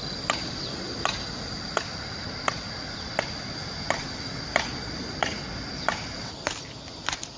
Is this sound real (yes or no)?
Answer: yes